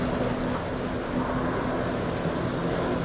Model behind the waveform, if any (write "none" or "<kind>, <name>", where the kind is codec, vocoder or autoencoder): none